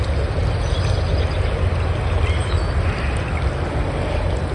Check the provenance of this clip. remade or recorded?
recorded